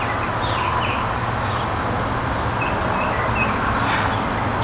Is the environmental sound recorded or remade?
recorded